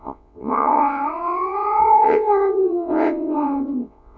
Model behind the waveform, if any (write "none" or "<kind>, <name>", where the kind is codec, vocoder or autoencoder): vocoder, WaveNeXt